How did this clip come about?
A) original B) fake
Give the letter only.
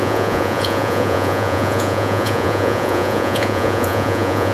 B